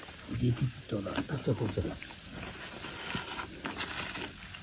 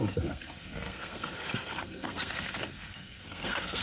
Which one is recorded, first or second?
first